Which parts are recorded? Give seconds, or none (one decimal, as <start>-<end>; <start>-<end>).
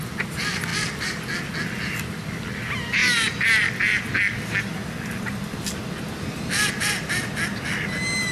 0.0-8.3